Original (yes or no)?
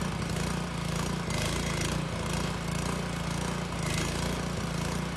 yes